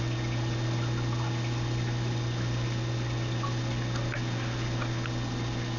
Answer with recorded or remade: recorded